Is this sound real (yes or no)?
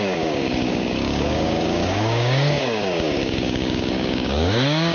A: no